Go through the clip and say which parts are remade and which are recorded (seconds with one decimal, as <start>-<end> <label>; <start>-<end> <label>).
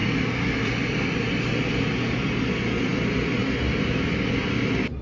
0.0-1.3 remade; 1.3-5.0 recorded